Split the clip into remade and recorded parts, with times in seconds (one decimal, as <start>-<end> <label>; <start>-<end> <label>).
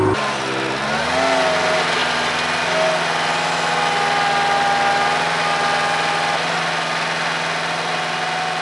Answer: 0.0-8.6 recorded